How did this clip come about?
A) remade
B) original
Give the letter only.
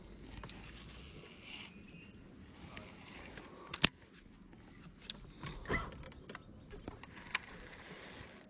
B